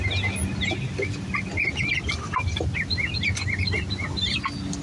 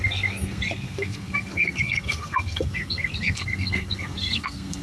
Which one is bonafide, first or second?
first